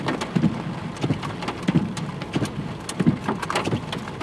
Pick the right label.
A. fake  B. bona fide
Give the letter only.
B